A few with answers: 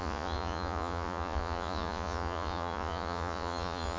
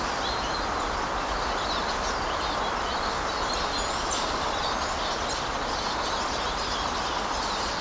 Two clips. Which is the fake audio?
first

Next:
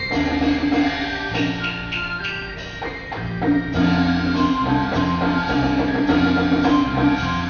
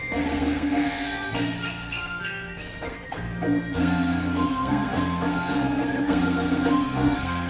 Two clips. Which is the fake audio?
second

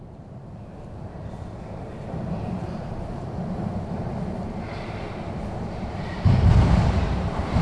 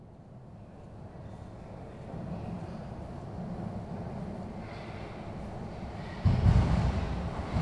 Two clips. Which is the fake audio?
first